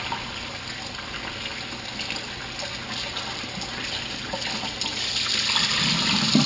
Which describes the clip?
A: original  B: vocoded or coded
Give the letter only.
A